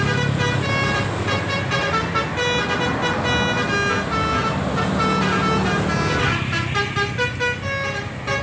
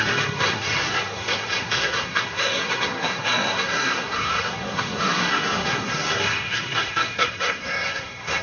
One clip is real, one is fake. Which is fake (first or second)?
second